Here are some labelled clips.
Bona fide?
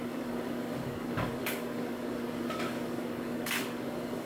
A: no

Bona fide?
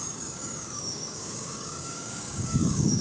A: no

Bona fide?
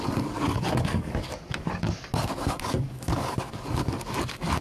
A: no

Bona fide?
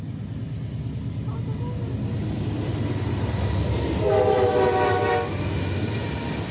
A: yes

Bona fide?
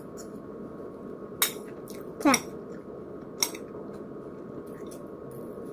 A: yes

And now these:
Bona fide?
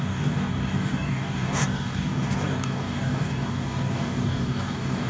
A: no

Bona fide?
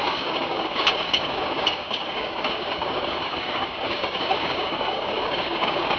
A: no